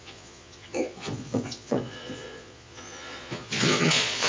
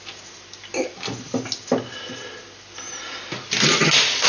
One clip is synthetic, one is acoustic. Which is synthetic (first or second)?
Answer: first